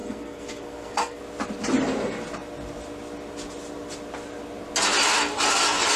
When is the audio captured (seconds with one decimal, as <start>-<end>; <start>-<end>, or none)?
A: 1.2-6.0